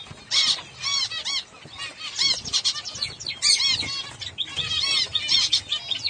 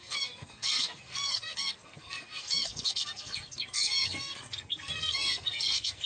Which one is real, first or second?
first